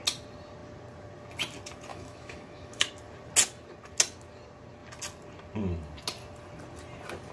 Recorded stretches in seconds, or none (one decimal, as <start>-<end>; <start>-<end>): 0.0-1.9; 2.9-7.3